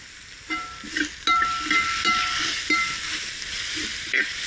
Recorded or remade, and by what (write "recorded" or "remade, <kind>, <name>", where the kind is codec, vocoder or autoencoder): recorded